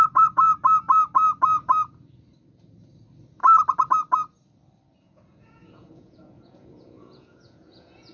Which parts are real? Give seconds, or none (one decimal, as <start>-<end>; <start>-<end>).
0.5-5.0